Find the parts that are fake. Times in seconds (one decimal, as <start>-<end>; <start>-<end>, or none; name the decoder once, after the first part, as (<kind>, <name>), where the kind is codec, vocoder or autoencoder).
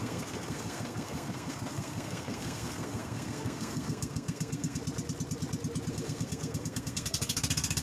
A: 0.0-4.8 (codec, SNAC); 5.9-7.8